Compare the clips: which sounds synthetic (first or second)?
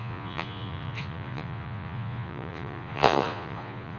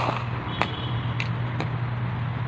first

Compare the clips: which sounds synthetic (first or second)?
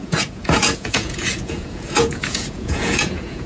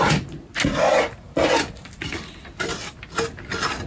first